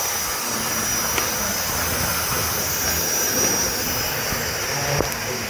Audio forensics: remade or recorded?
recorded